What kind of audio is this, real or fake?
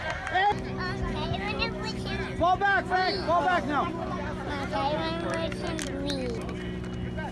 real